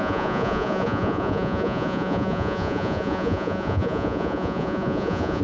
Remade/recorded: remade